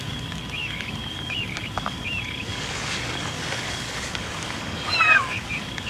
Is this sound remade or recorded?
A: remade